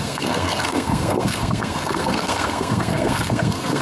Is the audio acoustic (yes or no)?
no